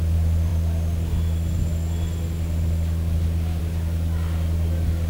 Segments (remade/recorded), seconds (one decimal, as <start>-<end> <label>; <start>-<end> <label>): 0.0-5.1 recorded